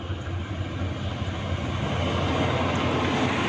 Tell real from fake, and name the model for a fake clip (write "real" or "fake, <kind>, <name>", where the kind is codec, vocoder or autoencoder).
real